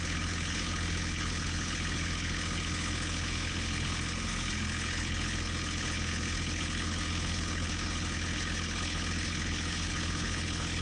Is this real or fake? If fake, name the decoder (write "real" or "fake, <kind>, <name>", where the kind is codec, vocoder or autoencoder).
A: fake, codec, HILCodec